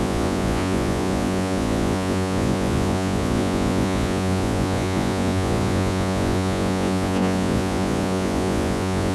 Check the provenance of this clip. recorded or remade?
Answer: remade